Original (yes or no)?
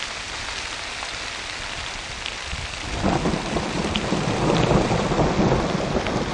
yes